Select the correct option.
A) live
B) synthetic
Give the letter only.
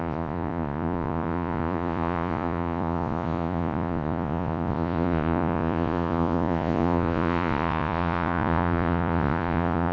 B